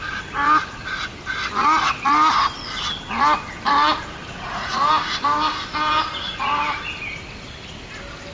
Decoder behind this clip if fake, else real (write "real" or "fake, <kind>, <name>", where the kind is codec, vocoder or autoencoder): real